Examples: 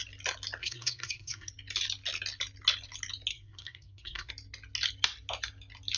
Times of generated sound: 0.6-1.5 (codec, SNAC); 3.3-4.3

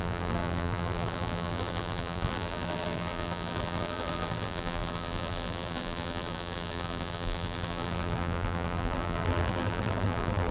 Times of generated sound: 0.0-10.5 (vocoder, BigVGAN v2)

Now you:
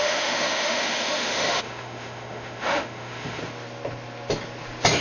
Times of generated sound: 0.0-3.4 (autoencoder, DAC-VAE)